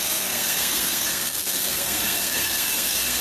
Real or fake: fake